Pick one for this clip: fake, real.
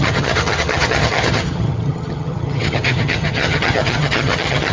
fake